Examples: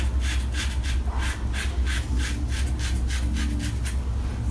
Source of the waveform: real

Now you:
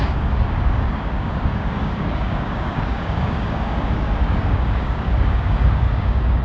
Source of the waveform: fake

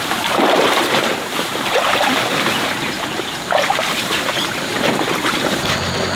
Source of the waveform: fake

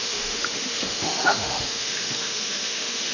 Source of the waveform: fake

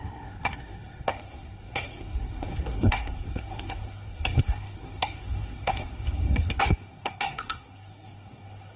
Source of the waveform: fake